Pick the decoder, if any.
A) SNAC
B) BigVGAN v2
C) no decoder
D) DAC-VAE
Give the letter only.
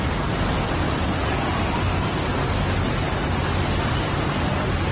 C